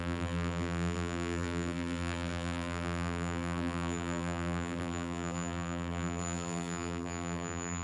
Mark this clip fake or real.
fake